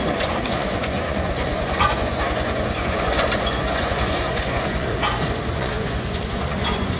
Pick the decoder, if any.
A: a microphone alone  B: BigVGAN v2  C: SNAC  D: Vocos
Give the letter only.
D